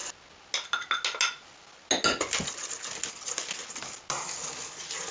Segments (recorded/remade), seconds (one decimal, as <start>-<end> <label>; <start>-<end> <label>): 0.0-5.1 recorded